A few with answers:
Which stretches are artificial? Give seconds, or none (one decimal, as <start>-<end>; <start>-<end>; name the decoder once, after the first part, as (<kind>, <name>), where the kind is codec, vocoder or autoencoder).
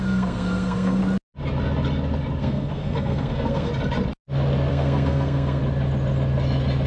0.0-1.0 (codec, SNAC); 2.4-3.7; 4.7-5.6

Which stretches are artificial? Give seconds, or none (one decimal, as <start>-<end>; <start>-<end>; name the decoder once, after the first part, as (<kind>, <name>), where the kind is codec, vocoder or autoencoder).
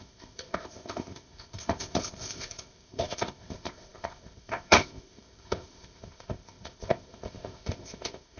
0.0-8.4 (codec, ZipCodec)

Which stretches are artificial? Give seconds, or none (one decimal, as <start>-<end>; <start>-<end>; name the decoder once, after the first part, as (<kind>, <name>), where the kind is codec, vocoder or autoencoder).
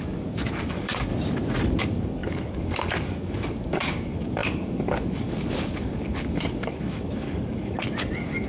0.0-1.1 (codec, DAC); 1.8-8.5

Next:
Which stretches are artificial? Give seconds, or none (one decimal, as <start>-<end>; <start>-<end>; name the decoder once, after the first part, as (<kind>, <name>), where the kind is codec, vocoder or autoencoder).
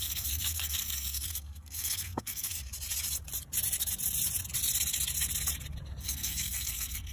0.0-2.6 (codec, SNAC); 6.0-7.1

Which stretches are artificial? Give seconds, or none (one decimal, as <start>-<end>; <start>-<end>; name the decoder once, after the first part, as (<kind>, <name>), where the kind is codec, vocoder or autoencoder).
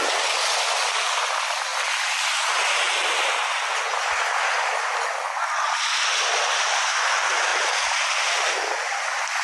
none